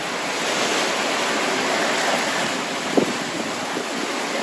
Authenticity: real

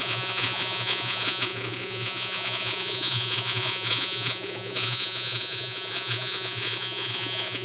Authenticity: fake